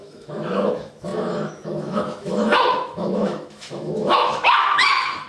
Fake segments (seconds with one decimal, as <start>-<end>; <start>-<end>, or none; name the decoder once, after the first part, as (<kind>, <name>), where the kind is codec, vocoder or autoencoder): 0.0-5.3 (autoencoder, DAC-VAE)